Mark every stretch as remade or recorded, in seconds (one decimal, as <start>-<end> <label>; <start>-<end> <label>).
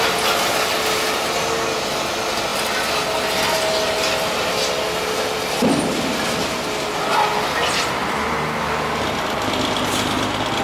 0.0-10.6 recorded